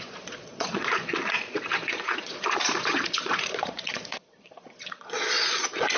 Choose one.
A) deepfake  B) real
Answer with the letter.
A